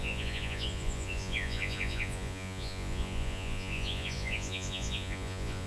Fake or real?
fake